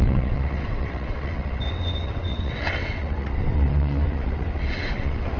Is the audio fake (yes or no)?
yes